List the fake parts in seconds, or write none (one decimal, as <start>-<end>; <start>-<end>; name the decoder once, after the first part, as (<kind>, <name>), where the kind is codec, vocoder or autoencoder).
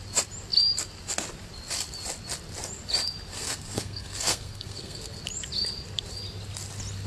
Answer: 3.3-5.2 (codec, SNAC)